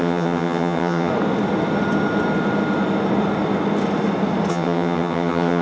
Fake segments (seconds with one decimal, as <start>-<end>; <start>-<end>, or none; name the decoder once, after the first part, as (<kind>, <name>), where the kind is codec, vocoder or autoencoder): 0.0-1.1 (vocoder, HiFi-GAN); 4.5-5.6